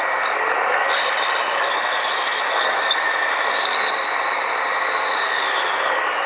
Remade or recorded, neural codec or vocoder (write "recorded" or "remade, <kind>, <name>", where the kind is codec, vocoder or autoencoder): recorded